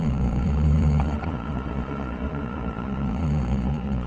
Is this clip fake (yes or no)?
yes